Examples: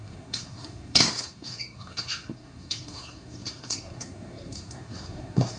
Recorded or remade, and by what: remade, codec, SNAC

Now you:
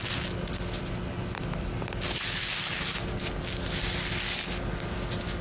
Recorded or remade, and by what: recorded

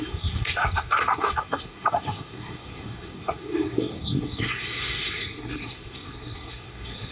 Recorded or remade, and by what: remade, codec, SNAC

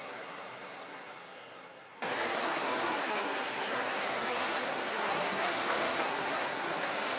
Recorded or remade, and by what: remade, codec, SNAC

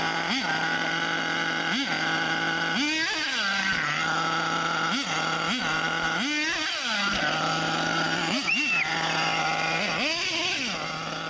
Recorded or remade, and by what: recorded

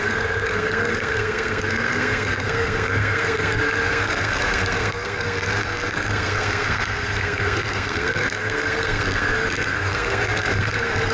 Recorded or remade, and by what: remade, codec, SNAC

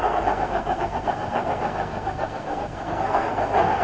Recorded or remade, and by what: remade, codec, SNAC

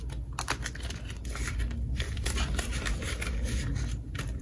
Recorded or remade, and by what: recorded